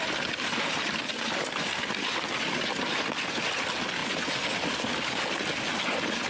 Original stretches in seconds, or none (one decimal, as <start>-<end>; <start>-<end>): 0.0-6.3